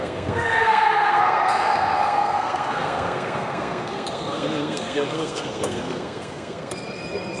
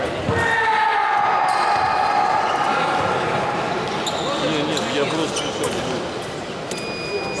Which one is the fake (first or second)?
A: first